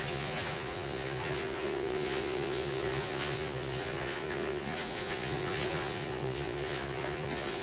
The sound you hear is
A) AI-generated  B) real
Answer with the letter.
A